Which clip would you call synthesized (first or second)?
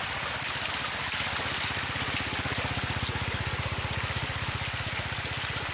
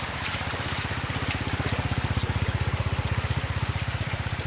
second